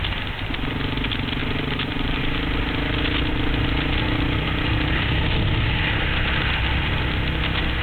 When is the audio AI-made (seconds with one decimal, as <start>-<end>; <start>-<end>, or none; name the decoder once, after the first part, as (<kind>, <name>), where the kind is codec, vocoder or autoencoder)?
1.4-2.2 (vocoder, BigVGAN v2)